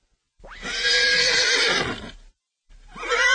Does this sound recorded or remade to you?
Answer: recorded